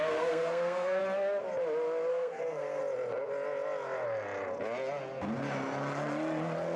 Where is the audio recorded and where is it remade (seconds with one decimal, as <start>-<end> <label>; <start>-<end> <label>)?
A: 0.0-1.0 remade; 1.0-2.1 recorded; 2.1-2.8 remade; 2.8-6.8 recorded